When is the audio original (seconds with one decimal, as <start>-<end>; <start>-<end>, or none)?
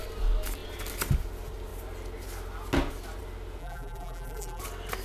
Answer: 0.0-3.6; 4.6-5.0